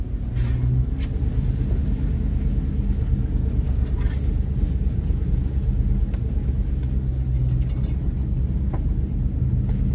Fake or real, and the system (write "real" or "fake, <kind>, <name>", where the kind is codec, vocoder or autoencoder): real